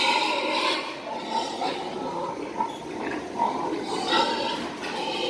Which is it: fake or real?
real